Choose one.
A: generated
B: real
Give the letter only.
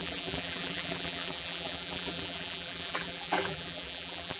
A